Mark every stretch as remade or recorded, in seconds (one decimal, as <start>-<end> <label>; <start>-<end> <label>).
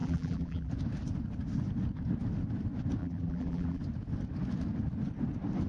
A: 0.0-0.7 remade; 0.7-3.0 recorded; 3.0-3.8 remade; 3.8-5.7 recorded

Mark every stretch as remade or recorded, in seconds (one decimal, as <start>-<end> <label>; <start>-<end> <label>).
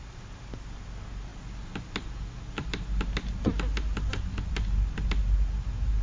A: 0.0-6.0 recorded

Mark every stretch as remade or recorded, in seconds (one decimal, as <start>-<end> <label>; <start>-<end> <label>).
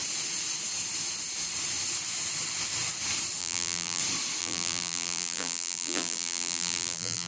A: 0.0-3.4 recorded; 3.4-4.0 remade; 4.0-4.4 recorded; 4.4-7.3 remade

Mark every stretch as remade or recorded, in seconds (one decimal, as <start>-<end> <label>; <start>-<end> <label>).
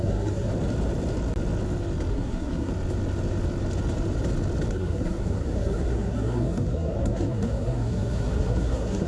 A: 0.0-0.5 remade; 0.5-2.1 recorded; 2.1-2.7 remade; 2.7-4.7 recorded; 4.7-9.1 remade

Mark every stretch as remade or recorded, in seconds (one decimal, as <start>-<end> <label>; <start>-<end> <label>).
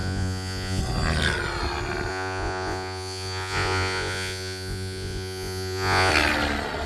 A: 0.0-0.8 remade; 0.8-2.1 recorded; 2.1-6.1 remade; 6.1-6.9 recorded